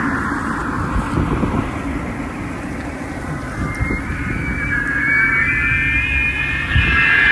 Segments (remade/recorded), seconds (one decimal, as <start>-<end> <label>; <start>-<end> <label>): 0.0-7.3 recorded